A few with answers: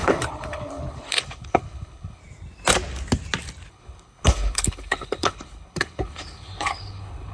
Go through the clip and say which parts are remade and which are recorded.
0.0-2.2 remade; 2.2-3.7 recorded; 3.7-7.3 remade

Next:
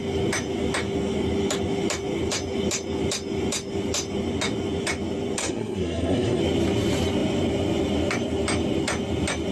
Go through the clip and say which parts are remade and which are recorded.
0.0-5.4 recorded; 5.4-6.4 remade; 6.4-9.5 recorded

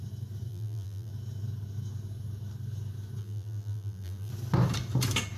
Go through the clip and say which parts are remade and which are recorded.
0.0-0.5 recorded; 0.5-1.1 remade; 1.1-3.2 recorded; 3.2-4.3 remade; 4.3-5.4 recorded

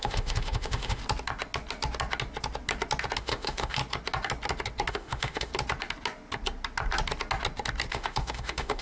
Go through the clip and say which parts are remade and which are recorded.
0.0-1.0 remade; 1.0-3.2 recorded; 3.2-3.8 remade; 3.8-4.9 recorded; 4.9-5.5 remade; 5.5-7.9 recorded; 7.9-8.8 remade